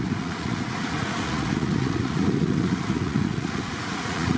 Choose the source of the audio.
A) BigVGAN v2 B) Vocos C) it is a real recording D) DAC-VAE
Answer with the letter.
B